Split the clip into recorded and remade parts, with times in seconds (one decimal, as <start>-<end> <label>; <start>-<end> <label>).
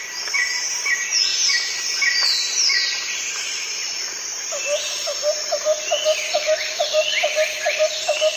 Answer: 0.0-8.4 recorded